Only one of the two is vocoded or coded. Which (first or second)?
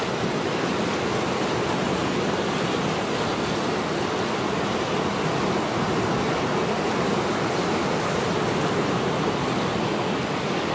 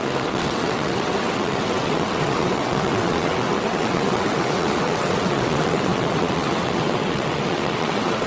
second